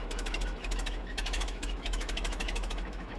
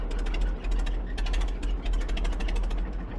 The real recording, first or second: second